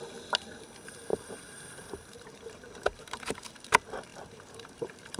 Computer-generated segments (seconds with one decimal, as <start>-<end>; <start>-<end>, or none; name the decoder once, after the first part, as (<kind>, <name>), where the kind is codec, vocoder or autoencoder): 1.1-3.6 (vocoder, BigVGAN v2); 4.1-5.2